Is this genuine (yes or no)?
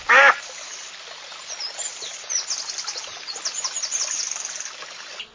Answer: yes